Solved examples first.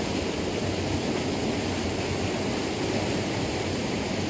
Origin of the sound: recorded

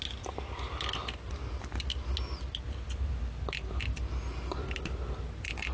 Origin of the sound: recorded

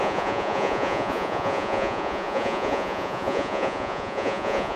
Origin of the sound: remade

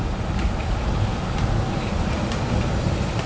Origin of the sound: recorded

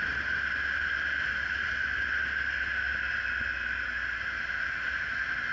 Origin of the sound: recorded